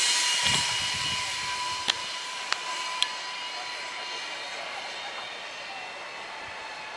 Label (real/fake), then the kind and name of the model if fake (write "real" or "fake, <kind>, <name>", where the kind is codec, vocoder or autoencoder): real